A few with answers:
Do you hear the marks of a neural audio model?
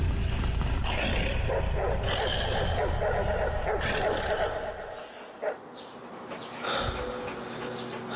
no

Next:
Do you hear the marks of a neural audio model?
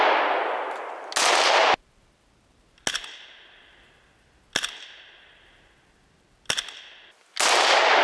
no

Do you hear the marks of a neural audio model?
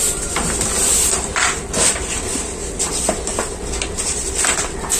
no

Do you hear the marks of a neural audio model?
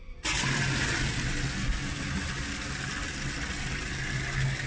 no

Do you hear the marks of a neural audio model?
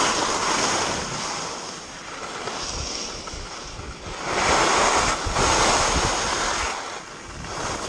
no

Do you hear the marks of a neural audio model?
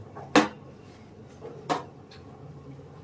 no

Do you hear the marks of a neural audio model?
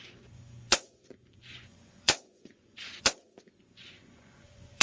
yes